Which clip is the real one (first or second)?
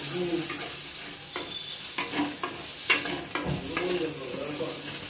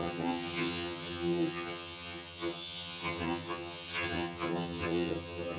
first